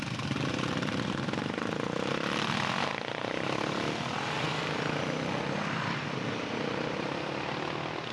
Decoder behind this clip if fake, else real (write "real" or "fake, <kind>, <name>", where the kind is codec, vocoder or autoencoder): real